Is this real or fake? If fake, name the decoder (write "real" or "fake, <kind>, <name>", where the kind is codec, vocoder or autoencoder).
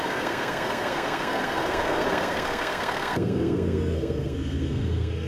fake, codec, SNAC